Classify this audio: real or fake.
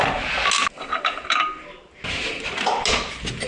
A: real